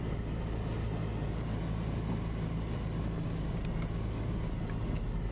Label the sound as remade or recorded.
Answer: recorded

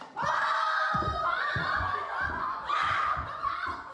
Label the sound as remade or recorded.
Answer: remade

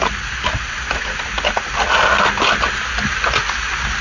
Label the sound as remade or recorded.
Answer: recorded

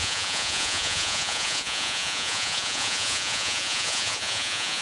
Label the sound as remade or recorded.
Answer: remade